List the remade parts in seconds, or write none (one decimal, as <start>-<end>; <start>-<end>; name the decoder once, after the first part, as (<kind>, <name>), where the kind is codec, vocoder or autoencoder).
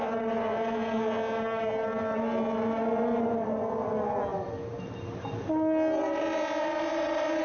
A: none